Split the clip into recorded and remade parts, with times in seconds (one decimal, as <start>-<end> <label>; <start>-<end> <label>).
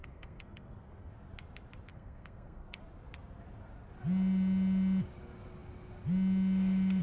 0.0-1.1 remade; 1.1-1.9 recorded; 1.9-2.8 remade; 2.8-7.0 recorded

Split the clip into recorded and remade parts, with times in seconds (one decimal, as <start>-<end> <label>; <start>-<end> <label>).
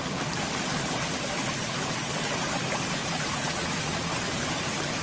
0.0-3.0 recorded; 3.0-4.0 remade; 4.0-5.0 recorded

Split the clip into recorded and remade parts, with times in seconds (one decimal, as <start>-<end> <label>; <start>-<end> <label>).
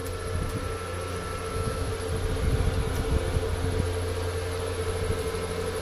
0.0-1.5 recorded; 1.5-1.9 remade; 1.9-5.8 recorded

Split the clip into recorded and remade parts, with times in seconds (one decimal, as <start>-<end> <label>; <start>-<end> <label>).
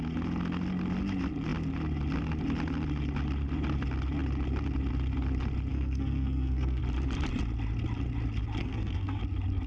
0.0-5.7 recorded; 5.7-6.8 remade; 6.8-8.6 recorded; 8.6-9.2 remade; 9.2-9.7 recorded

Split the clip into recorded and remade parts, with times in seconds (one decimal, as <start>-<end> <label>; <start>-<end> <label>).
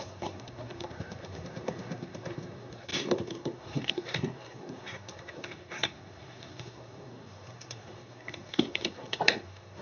0.0-9.8 remade